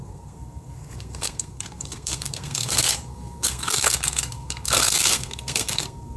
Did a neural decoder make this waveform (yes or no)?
yes